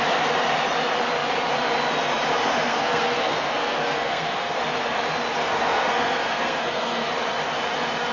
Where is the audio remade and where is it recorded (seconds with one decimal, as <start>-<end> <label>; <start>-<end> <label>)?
0.0-2.7 recorded; 2.7-4.6 remade; 4.6-5.4 recorded; 5.4-7.1 remade; 7.1-8.1 recorded